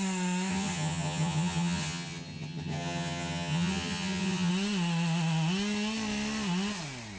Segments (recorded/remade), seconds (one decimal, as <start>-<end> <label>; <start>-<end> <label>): 0.0-0.5 recorded; 0.5-4.5 remade; 4.5-7.2 recorded